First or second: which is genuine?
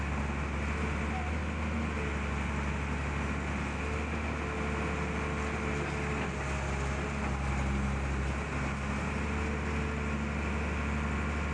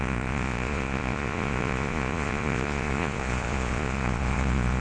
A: first